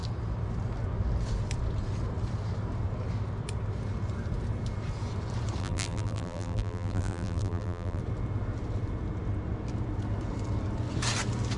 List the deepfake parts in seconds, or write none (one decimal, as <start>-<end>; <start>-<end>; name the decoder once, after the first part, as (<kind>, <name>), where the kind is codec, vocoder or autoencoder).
5.6-8.0 (vocoder, BigVGAN v2)